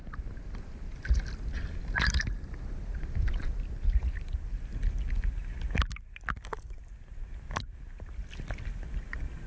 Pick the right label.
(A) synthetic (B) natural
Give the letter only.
B